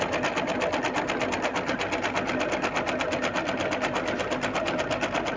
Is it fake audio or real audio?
real